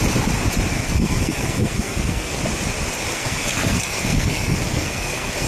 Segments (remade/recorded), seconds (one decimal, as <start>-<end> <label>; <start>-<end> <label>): 0.0-0.7 recorded; 0.7-2.4 remade; 2.4-3.1 recorded; 3.1-5.5 remade